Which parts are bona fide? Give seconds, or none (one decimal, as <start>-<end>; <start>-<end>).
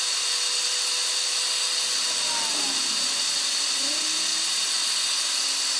0.0-5.8